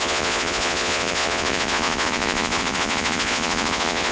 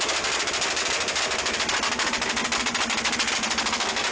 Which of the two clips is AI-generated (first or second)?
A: first